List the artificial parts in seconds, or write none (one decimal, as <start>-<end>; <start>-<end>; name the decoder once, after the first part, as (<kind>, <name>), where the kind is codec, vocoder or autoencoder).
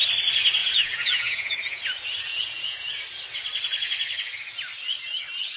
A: 0.6-1.8 (vocoder, Vocos); 2.3-2.9